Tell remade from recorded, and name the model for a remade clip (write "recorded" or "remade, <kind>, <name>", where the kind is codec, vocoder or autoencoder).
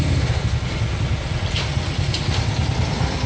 recorded